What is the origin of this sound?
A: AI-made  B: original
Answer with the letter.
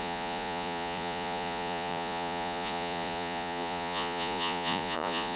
A